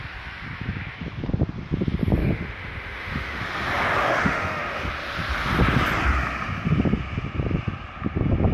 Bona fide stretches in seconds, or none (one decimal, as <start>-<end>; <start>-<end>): 0.0-2.2; 3.4-4.0; 4.9-8.5